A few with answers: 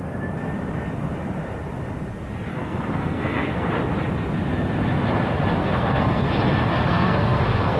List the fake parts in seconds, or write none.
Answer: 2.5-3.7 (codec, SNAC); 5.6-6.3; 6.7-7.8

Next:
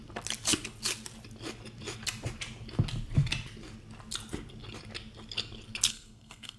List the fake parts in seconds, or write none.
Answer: 5.9-6.6 (codec, SNAC)

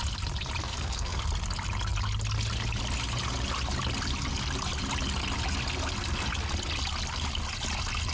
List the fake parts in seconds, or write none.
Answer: 0.6-1.2 (codec, SNAC)

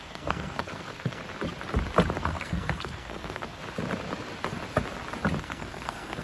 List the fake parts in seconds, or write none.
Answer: 0.0-1.2 (codec, SNAC); 2.2-3.6; 5.4-6.2

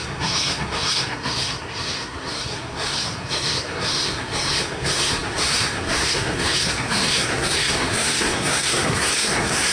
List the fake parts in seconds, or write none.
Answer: 0.0-9.7 (codec, SNAC)

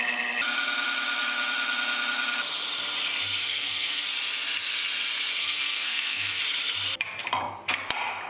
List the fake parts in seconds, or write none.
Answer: 3.4-4.0 (codec, SNAC); 5.4-6.4

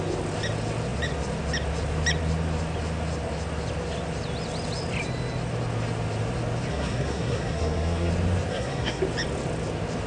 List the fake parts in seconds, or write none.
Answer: 6.7-8.1 (codec, SNAC); 8.5-9.0

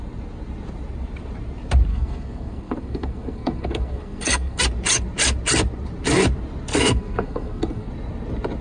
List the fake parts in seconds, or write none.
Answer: 1.9-4.6 (codec, SNAC); 6.7-7.9